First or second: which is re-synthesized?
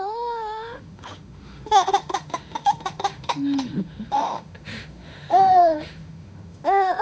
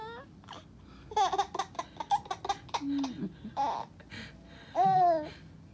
first